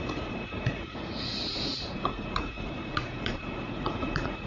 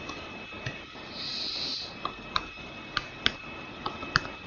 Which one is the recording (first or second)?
second